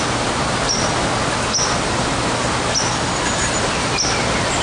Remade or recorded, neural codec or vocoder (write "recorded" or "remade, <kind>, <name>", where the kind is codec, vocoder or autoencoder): recorded